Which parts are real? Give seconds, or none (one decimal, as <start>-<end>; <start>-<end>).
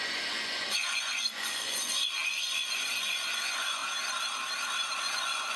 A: 3.8-5.0